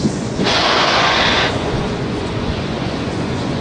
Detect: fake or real fake